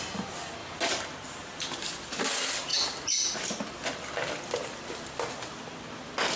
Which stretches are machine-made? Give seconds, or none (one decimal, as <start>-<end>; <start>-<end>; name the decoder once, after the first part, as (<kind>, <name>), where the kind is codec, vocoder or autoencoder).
none